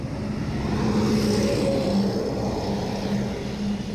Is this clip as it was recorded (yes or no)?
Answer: yes